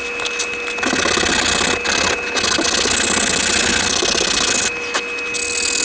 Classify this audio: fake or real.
real